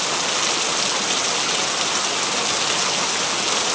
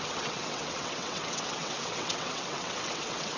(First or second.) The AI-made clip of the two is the second